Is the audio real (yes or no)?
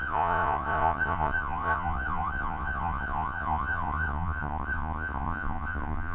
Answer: no